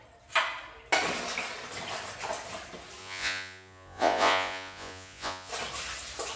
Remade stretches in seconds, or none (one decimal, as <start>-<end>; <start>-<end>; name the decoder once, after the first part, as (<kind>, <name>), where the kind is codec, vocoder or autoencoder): 3.0-5.5 (vocoder, Vocos)